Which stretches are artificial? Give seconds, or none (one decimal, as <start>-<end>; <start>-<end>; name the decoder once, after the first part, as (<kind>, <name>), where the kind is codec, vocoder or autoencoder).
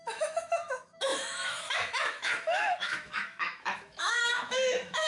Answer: 0.0-5.1 (autoencoder, DAC-VAE)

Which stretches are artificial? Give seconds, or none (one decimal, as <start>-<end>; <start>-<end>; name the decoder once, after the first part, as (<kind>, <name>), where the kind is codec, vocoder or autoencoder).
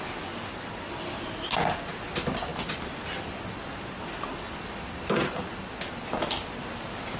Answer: none